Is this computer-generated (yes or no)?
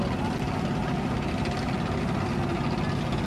no